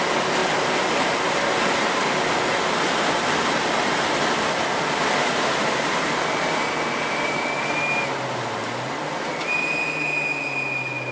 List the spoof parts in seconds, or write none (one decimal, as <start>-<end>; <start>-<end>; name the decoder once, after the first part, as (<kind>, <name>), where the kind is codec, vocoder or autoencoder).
none